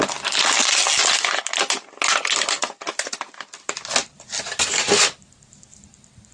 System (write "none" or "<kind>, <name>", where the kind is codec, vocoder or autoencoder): none